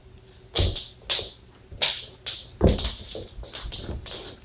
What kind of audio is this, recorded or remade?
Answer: recorded